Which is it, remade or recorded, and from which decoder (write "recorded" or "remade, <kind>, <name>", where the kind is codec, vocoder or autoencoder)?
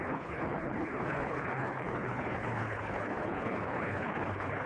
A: remade, codec, HILCodec